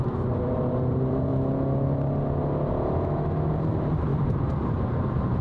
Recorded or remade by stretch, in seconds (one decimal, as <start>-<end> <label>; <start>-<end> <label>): 0.0-1.3 remade; 1.3-3.5 recorded; 3.5-5.4 remade